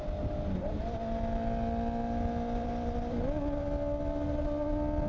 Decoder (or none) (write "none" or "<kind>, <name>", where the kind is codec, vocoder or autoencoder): none